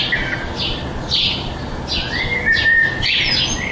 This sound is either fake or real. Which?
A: real